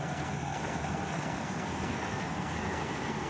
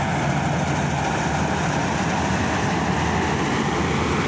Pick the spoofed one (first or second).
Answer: first